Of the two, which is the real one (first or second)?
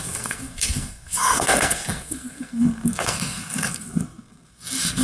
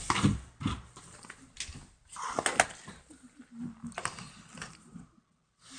second